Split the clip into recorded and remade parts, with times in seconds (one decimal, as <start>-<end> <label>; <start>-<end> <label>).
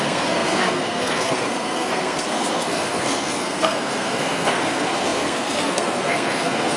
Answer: 0.0-6.8 remade